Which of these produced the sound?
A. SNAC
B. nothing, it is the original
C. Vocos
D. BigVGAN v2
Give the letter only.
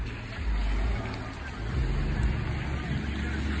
B